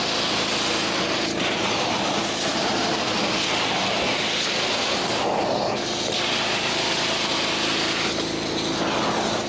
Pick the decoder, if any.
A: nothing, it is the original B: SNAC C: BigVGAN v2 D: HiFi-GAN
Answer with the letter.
A